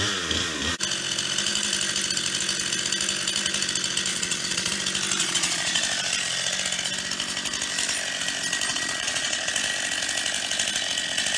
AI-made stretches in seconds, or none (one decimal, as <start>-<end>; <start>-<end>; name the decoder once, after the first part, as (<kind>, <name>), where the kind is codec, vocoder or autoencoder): 4.1-4.7 (vocoder, Vocos); 5.2-5.8; 8.7-9.5